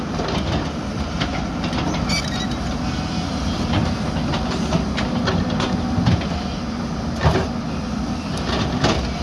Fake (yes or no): no